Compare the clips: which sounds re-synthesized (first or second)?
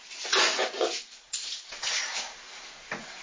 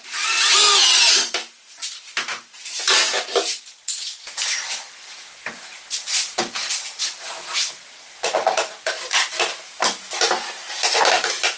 first